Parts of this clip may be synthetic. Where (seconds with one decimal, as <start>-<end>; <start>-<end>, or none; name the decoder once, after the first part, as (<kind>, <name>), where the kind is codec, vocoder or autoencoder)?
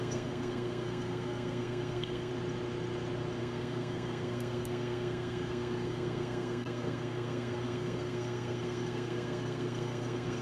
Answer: 0.0-2.3 (codec, SNAC); 3.4-10.4